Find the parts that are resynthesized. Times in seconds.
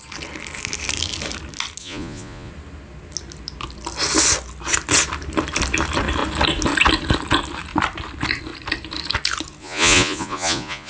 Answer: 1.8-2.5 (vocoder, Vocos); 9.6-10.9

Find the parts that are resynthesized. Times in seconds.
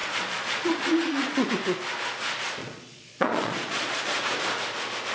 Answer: 0.0-1.5 (vocoder, Vocos); 2.6-4.2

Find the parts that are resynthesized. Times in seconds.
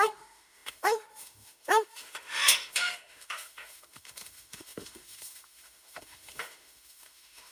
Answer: 0.0-7.5 (autoencoder, DAC-VAE)